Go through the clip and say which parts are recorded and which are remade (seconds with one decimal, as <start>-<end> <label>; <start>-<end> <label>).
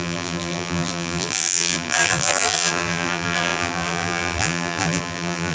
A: 0.0-5.5 remade